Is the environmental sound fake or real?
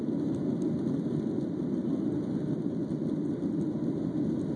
real